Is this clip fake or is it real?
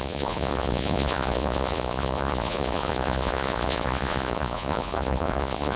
fake